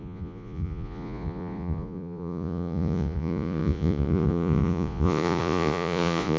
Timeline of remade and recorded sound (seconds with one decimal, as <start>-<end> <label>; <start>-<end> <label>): 0.0-6.4 remade